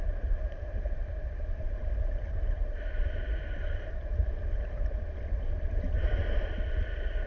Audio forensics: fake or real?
fake